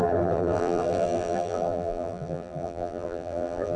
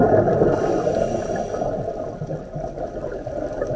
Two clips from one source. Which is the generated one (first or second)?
first